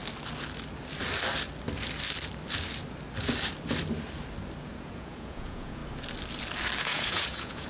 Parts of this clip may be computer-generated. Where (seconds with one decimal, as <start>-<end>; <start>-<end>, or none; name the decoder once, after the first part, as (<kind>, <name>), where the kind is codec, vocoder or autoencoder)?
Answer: 4.6-5.8 (vocoder, Vocos); 6.8-7.7